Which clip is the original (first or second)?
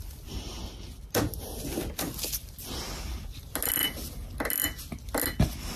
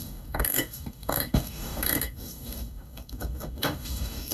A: first